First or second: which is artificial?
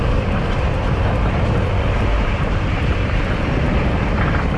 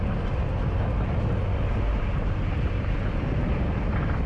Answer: first